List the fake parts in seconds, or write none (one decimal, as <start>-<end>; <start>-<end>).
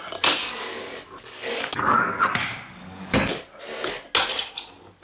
0.4-3.4